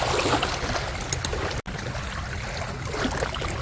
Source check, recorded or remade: recorded